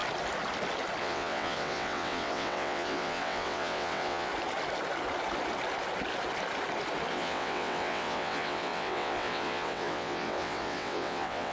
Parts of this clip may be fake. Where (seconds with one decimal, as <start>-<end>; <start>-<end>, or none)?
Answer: 1.0-4.3; 7.1-11.5